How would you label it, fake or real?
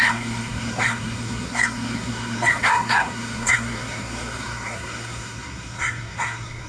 fake